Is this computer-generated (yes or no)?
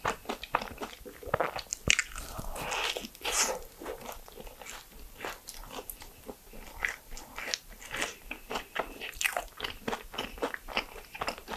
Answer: no